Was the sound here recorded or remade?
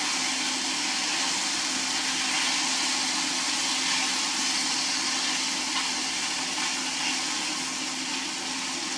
recorded